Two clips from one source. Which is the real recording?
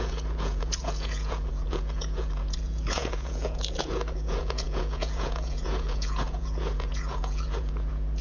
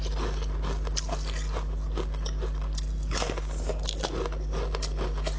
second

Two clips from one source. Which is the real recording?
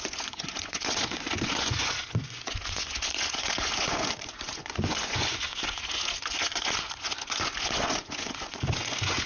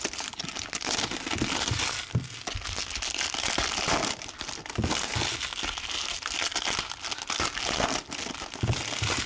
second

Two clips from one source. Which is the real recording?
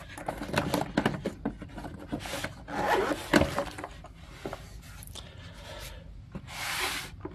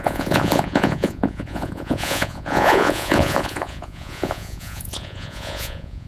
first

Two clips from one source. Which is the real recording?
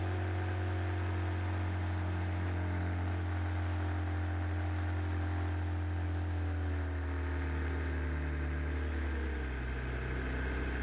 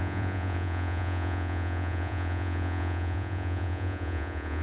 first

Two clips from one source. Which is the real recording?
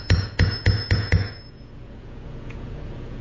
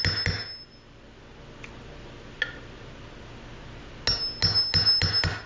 second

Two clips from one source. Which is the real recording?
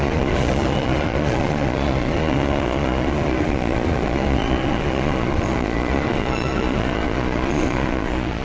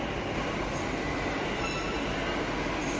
second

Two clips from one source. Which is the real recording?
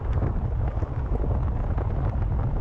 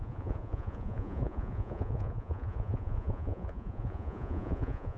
first